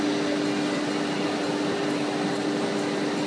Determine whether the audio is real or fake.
real